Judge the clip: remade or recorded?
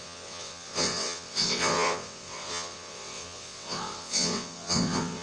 remade